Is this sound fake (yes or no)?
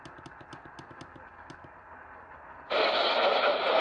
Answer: no